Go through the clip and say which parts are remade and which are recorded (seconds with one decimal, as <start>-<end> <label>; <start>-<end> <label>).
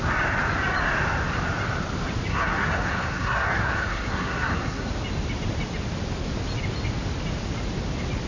0.0-2.3 recorded; 2.3-4.9 remade; 4.9-8.3 recorded